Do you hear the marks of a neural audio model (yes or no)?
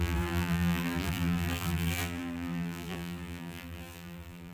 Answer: yes